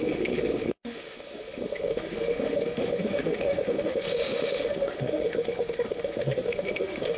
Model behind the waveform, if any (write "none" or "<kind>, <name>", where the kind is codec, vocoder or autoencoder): autoencoder, DAC-VAE